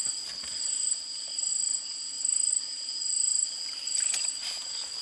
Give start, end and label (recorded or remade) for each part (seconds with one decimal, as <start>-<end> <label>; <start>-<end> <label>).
0.0-5.0 recorded